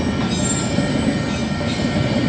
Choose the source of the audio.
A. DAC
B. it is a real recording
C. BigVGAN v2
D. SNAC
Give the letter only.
B